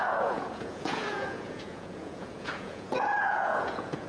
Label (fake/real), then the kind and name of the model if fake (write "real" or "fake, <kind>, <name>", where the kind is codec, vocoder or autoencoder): fake, vocoder, Vocos